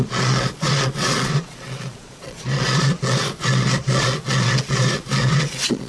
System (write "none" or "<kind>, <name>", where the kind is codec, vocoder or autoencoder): vocoder, Vocos